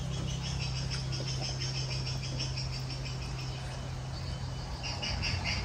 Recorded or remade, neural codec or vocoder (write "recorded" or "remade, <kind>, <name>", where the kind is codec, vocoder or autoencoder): recorded